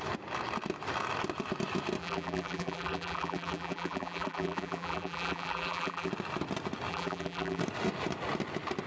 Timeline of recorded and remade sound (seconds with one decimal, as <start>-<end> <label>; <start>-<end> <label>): 0.0-2.0 recorded; 2.0-6.1 remade; 6.1-6.9 recorded; 6.9-7.6 remade; 7.6-8.9 recorded